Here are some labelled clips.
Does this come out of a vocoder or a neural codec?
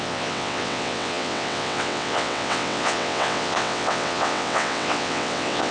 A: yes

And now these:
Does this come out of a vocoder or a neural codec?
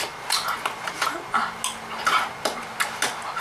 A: no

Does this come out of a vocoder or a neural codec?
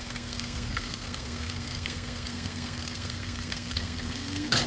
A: yes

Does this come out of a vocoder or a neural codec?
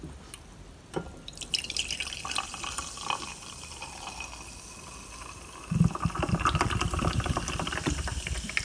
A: no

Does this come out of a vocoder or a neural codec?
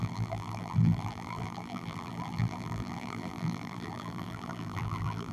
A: yes